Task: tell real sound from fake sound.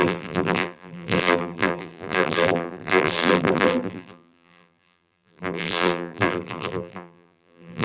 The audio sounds fake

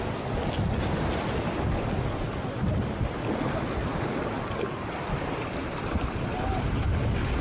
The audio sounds real